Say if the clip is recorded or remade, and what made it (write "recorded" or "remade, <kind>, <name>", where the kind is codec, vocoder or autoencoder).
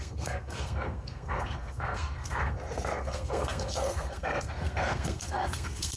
remade, codec, SNAC